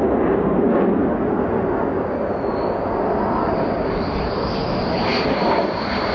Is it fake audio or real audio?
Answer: real